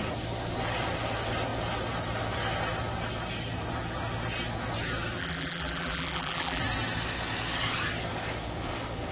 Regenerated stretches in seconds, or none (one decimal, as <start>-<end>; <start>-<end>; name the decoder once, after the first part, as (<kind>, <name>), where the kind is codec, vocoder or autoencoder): 5.2-6.6 (vocoder, BigVGAN v2)